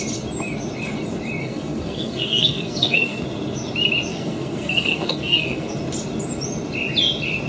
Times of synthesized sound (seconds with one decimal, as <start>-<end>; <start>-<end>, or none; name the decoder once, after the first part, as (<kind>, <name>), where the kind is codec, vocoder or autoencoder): 1.4-3.2 (codec, SNAC); 4.1-5.7

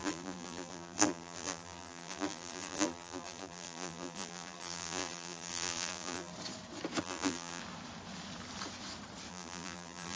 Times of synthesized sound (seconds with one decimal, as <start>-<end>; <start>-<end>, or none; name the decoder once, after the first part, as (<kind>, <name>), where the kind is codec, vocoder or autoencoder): 0.0-6.3 (vocoder, BigVGAN v2); 7.0-7.6; 9.3-10.2

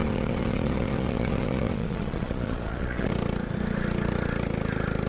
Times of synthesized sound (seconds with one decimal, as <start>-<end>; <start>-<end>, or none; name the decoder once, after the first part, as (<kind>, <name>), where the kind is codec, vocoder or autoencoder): 0.0-3.1 (vocoder, Vocos)

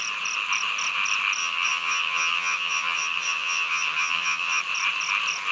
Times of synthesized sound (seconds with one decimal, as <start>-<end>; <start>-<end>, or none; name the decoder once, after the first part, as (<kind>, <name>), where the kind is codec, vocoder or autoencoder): 1.4-4.6 (vocoder, HiFi-GAN)

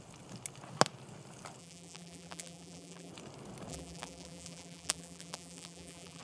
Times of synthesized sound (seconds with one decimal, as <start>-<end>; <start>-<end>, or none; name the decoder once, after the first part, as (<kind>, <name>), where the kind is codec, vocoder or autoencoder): 1.6-3.1 (vocoder, BigVGAN v2); 3.7-6.2

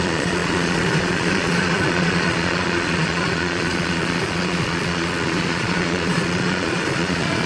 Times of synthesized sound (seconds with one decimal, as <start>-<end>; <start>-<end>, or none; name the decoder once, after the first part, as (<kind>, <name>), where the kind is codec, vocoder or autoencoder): 0.0-7.5 (vocoder, Vocos)